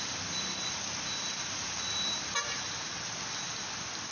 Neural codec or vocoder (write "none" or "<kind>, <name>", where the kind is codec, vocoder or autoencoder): none